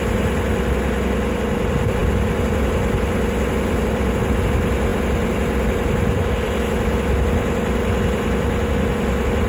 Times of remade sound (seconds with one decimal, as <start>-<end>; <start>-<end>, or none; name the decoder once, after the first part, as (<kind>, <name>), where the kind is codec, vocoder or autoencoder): none